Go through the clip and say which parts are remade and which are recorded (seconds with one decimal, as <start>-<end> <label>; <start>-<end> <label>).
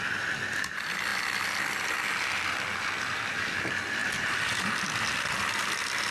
0.0-6.1 recorded